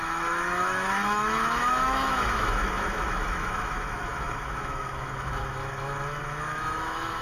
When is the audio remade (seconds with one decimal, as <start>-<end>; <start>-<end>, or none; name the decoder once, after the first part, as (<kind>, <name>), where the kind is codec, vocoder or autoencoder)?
0.0-7.2 (autoencoder, DAC-VAE)